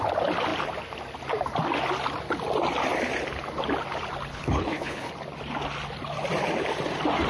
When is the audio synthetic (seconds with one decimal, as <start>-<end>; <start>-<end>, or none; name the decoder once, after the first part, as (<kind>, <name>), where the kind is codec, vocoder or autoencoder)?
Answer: 4.3-5.1 (codec, HILCodec)